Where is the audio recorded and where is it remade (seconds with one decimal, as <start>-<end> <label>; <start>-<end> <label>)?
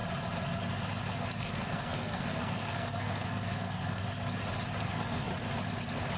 0.0-1.4 recorded; 1.4-4.0 remade; 4.0-4.8 recorded; 4.8-5.3 remade; 5.3-6.2 recorded